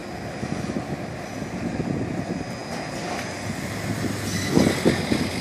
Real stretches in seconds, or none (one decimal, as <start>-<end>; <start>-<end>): 0.0-5.4